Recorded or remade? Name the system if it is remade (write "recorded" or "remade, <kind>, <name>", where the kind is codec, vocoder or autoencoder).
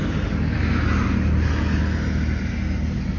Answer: recorded